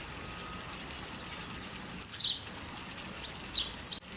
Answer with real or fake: real